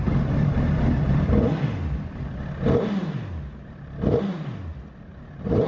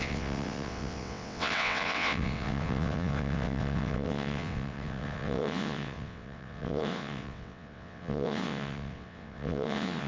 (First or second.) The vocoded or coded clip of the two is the second